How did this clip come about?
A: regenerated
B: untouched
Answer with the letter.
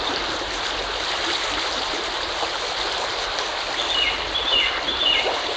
B